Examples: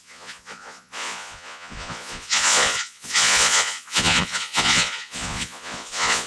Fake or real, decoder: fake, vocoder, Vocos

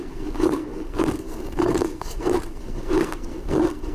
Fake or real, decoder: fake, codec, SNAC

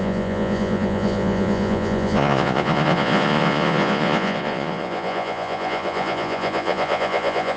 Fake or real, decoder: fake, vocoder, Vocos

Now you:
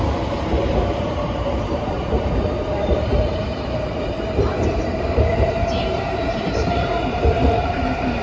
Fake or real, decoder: fake, vocoder, BigVGAN v2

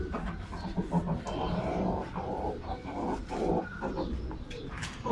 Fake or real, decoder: real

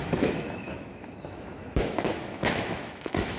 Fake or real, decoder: fake, autoencoder, DAC-VAE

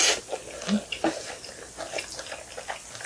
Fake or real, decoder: real